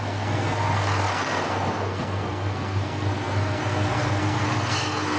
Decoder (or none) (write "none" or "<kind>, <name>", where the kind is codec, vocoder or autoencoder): codec, SNAC